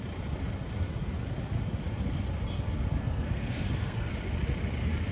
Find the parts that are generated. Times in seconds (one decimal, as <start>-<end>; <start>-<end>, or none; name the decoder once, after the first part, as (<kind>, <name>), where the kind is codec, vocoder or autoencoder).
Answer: 3.0-4.1 (codec, SNAC)